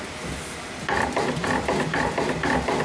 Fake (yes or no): no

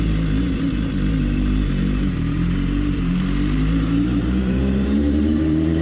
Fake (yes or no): yes